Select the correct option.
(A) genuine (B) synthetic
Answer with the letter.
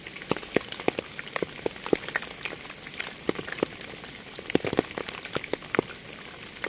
A